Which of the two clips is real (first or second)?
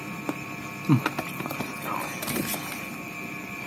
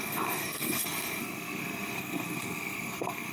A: first